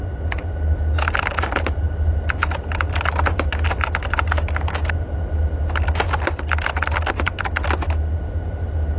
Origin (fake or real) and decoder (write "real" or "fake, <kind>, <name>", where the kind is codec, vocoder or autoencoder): real